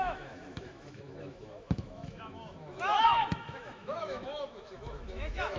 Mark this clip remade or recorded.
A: remade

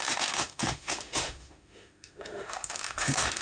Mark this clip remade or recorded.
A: remade